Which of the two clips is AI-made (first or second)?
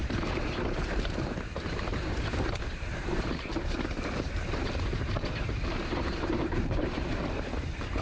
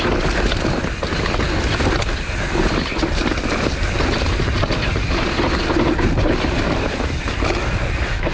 first